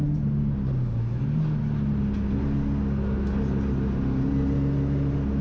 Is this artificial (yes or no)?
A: no